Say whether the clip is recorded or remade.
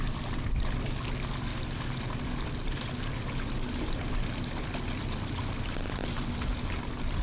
recorded